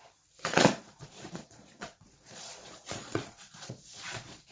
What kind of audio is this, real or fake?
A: fake